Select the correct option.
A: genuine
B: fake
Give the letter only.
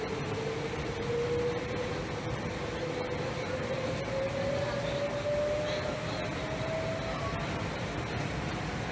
A